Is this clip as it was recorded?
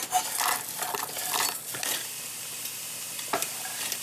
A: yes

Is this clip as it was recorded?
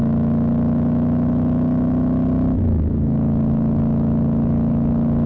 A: no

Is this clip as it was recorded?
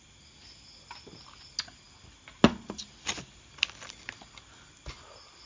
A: yes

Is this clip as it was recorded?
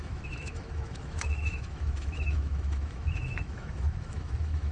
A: no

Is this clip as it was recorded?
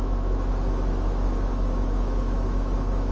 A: no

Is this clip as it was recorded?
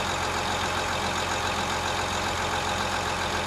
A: yes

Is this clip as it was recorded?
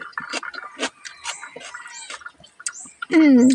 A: yes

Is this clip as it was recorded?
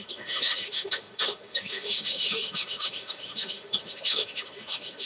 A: no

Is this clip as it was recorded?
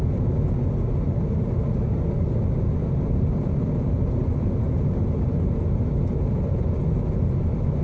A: yes